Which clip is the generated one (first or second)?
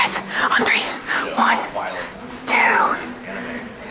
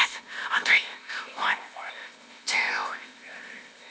second